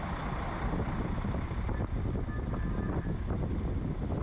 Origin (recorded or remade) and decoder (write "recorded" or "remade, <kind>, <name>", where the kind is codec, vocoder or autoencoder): recorded